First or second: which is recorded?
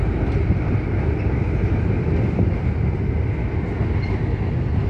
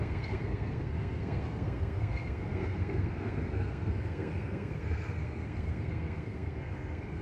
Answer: first